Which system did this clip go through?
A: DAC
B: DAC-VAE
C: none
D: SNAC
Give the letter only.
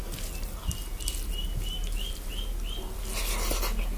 C